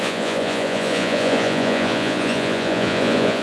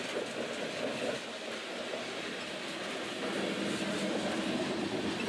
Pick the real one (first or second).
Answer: second